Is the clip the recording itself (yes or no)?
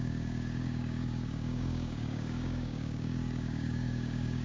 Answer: no